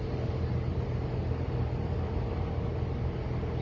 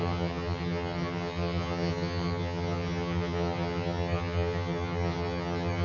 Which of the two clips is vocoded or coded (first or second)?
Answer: second